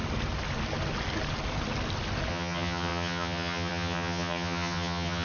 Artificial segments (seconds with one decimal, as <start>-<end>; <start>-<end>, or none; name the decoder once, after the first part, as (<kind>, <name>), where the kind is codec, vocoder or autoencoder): 2.3-5.2 (vocoder, HiFi-GAN)